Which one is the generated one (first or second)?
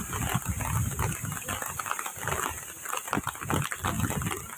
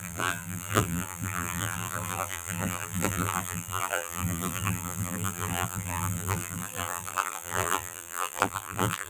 second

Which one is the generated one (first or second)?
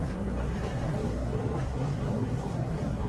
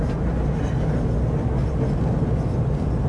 first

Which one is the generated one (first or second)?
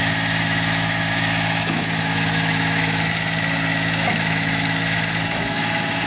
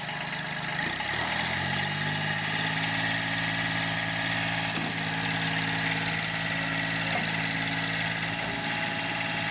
first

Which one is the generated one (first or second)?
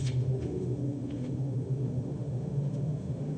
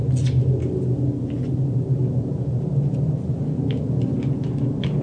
first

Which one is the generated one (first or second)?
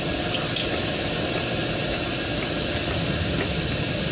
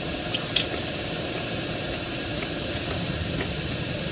second